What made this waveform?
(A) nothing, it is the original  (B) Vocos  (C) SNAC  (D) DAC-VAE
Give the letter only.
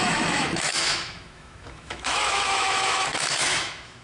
D